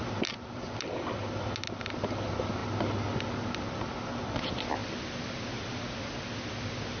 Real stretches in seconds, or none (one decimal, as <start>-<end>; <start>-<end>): 0.0-7.0